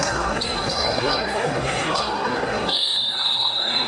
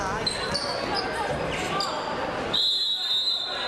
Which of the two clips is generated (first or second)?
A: first